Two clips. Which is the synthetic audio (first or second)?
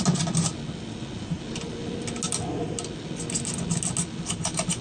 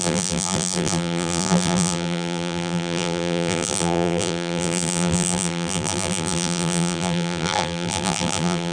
second